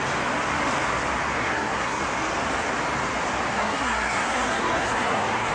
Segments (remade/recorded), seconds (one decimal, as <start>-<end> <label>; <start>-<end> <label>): 0.0-1.4 recorded; 1.4-2.0 remade; 2.0-3.5 recorded; 3.5-5.5 remade